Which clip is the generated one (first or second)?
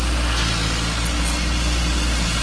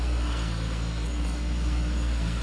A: second